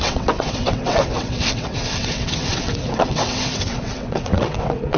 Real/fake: fake